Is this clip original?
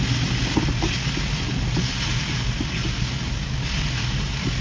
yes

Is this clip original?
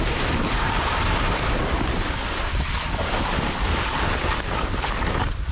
yes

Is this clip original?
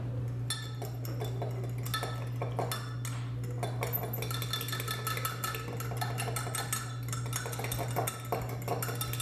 yes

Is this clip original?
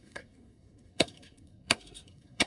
no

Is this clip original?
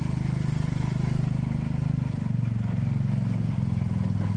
yes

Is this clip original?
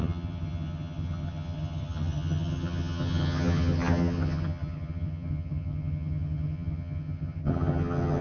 no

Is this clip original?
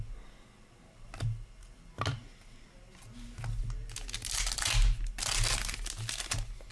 yes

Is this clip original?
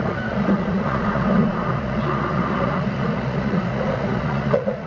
no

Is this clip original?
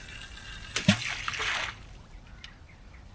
yes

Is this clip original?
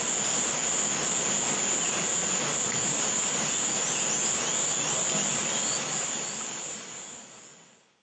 yes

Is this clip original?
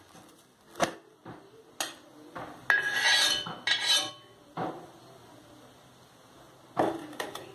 yes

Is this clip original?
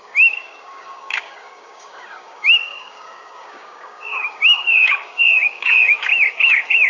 no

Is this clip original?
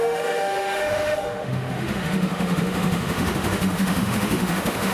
no